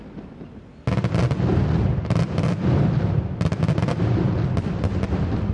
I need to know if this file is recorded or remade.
recorded